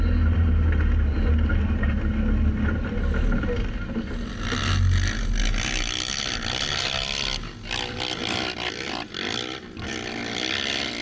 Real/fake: real